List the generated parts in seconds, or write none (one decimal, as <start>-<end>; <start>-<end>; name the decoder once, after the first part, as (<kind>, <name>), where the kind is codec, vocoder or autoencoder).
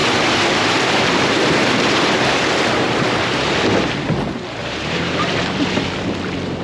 0.0-2.5 (vocoder, BigVGAN v2); 4.6-5.9